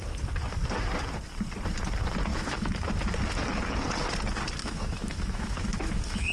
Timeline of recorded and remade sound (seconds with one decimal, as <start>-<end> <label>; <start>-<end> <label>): 0.0-2.3 recorded; 2.3-2.8 remade; 2.8-4.6 recorded; 4.6-6.3 remade